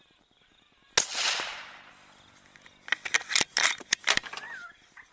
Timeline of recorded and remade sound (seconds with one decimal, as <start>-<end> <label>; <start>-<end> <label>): 0.0-1.1 recorded; 1.1-1.9 remade; 1.9-3.5 recorded; 3.5-4.4 remade; 4.4-5.1 recorded